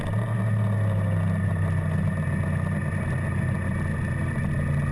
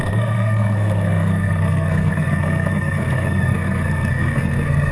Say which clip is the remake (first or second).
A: second